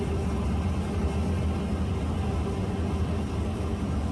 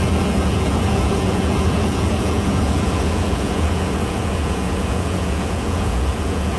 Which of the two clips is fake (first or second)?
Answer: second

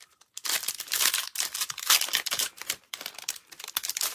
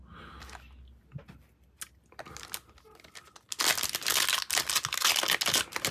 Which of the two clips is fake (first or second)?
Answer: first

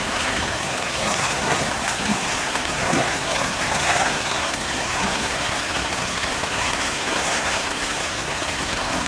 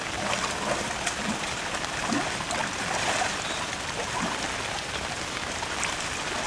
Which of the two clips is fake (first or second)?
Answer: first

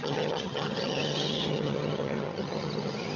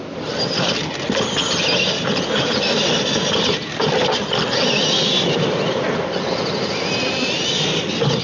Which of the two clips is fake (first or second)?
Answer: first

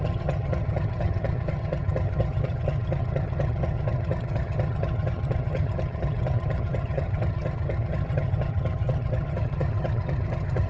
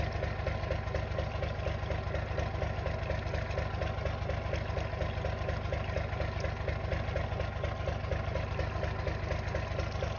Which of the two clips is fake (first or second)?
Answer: first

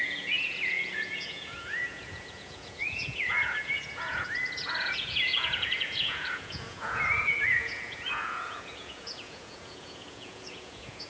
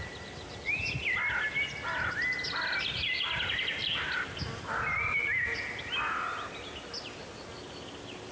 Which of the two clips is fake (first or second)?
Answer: first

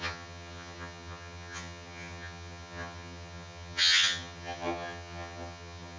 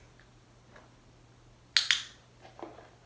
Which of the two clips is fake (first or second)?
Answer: first